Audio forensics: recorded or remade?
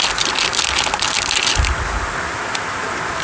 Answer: recorded